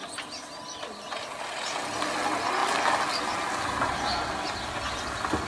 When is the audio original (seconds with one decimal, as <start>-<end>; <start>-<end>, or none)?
0.0-5.5